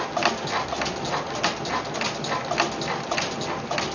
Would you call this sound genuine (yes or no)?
yes